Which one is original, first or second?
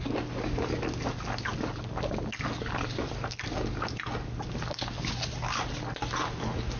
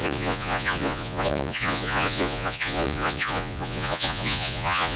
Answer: first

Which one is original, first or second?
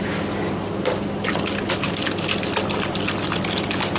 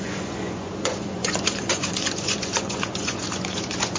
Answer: first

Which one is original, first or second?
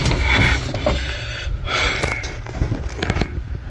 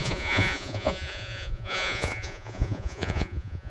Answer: first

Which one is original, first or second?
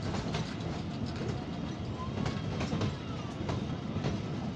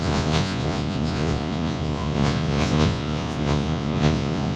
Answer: first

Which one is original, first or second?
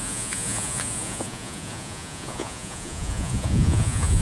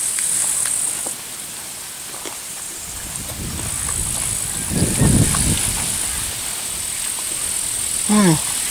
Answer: second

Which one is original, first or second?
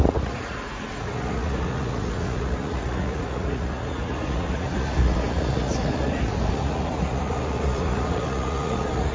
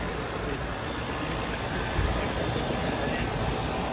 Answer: second